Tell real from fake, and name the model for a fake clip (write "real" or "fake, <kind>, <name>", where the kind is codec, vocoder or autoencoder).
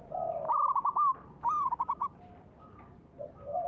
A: real